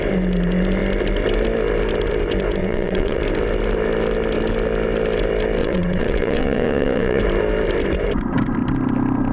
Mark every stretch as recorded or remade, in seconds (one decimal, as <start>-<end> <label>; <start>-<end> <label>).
0.0-2.6 recorded; 2.6-3.2 remade; 3.2-5.6 recorded; 5.6-7.2 remade; 7.2-9.3 recorded